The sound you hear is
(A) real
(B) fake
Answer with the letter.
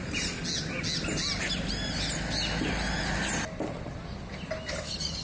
A